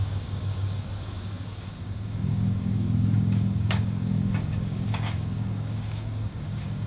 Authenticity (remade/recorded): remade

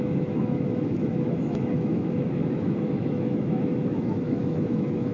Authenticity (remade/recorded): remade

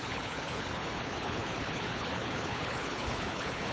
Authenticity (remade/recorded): remade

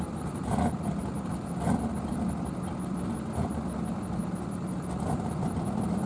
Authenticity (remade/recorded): remade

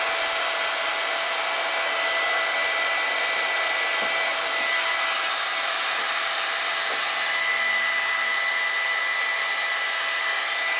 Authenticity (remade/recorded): recorded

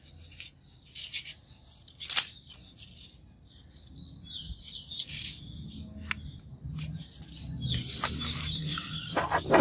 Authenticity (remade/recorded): recorded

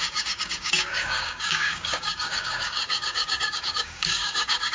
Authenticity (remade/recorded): remade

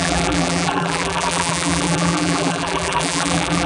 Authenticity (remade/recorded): remade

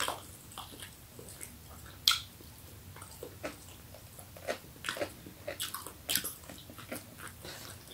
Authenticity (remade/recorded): recorded